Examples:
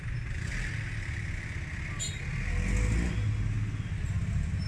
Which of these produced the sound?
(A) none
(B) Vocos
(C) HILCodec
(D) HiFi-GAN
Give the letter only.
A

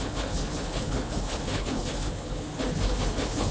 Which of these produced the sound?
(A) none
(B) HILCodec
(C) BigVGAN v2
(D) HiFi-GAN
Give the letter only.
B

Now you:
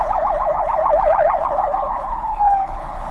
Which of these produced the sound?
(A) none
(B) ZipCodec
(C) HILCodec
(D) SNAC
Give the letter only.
C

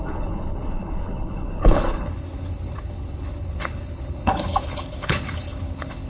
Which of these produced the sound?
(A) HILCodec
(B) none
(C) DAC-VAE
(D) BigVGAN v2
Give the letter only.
A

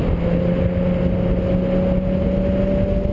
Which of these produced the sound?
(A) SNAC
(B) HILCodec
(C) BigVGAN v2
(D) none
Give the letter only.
D